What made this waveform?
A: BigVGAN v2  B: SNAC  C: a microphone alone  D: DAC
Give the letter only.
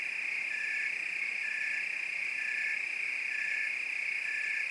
C